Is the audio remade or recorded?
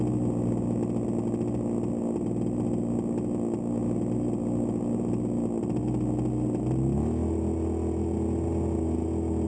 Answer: recorded